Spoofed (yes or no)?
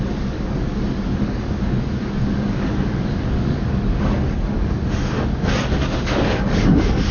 yes